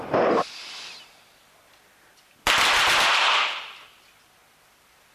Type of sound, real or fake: fake